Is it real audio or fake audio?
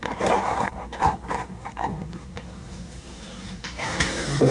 fake